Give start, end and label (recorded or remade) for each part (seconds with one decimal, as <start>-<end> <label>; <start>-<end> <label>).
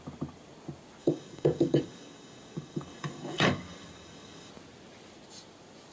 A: 0.0-1.0 recorded; 1.0-4.5 remade; 4.5-5.9 recorded